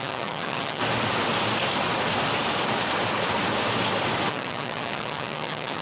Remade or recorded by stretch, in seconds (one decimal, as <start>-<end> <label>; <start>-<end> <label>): 0.0-0.8 remade; 0.8-4.3 recorded; 4.3-5.8 remade